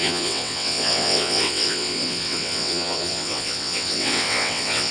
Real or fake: fake